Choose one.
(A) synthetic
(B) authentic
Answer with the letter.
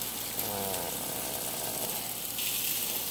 B